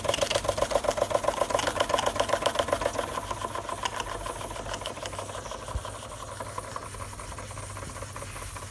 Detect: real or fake real